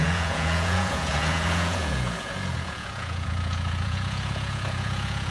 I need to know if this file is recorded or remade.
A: remade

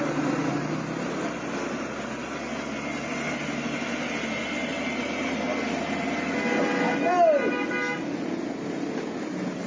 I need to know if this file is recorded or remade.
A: recorded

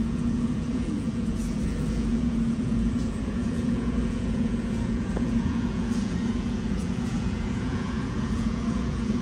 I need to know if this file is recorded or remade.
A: remade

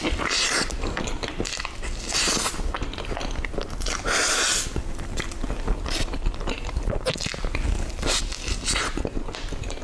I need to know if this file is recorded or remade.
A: remade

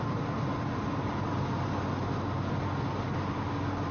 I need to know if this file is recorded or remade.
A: recorded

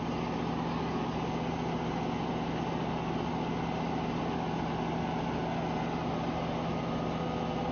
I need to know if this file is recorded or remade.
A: recorded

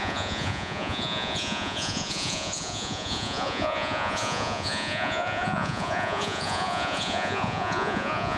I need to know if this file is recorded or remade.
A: remade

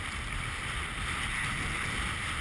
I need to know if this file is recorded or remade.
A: recorded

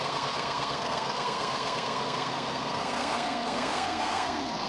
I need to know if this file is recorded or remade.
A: remade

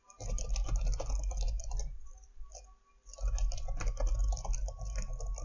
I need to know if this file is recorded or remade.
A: recorded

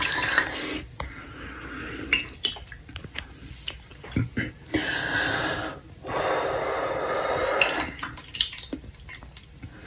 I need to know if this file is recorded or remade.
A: recorded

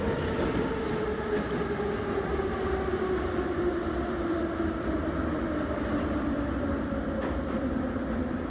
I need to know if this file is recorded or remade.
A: recorded